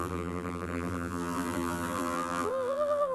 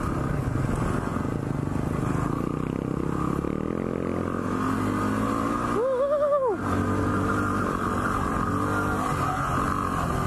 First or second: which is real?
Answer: second